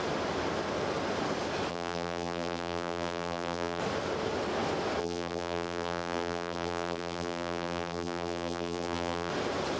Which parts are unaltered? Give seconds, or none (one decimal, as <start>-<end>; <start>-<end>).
0.0-1.7; 3.8-5.0; 9.3-9.8